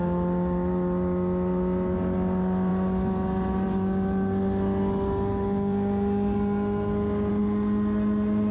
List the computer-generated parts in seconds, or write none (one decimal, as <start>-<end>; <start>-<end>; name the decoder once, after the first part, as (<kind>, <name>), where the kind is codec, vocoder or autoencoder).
none